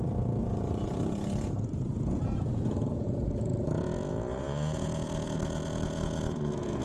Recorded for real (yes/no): no